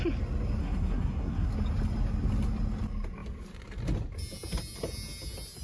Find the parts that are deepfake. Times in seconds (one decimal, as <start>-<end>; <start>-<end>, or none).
0.6-1.5